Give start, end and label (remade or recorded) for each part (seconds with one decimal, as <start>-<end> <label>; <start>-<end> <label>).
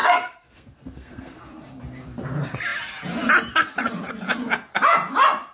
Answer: 0.0-1.4 remade; 1.4-5.5 recorded